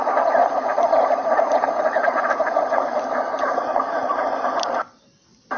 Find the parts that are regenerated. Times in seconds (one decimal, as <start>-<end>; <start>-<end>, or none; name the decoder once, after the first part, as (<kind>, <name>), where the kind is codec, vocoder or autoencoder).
0.4-3.0 (vocoder, BigVGAN v2); 3.4-4.2